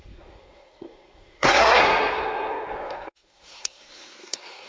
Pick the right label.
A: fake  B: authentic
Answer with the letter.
A